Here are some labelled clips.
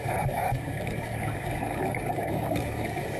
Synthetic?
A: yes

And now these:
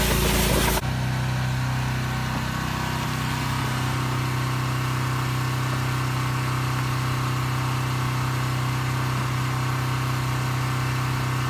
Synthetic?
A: no